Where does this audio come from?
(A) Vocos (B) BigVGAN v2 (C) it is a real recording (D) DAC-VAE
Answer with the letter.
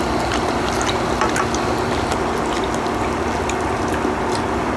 C